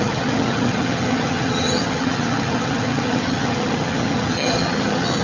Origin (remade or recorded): remade